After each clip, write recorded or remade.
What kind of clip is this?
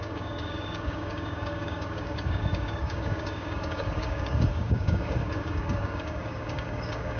remade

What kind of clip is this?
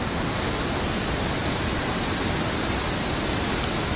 recorded